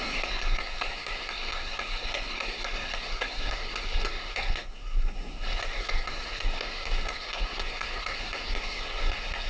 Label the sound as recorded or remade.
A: remade